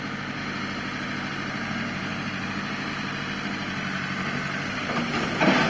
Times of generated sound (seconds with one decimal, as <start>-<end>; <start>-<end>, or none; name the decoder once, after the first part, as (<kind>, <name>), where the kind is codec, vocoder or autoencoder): none